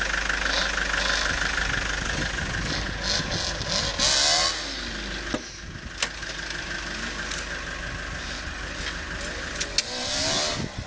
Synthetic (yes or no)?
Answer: no